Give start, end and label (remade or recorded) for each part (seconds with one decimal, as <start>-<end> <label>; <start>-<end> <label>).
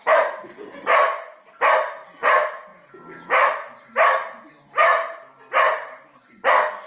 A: 0.0-6.9 recorded